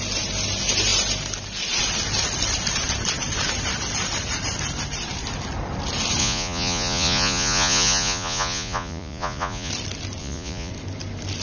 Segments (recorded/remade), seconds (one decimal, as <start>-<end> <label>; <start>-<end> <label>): 0.0-6.2 recorded; 6.2-9.7 remade; 9.7-10.2 recorded; 10.2-10.7 remade; 10.7-11.4 recorded